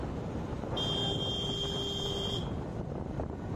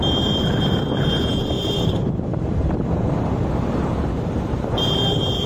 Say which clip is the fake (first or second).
second